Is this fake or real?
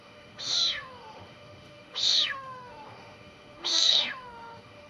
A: fake